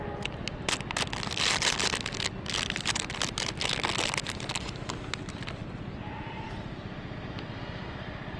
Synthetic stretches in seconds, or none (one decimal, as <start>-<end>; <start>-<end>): none